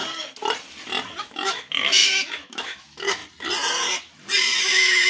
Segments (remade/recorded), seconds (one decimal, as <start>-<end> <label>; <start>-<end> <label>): 0.0-1.2 recorded; 1.2-3.2 remade; 3.2-4.6 recorded; 4.6-5.1 remade